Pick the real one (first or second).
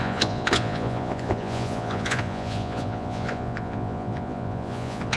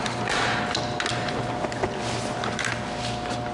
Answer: second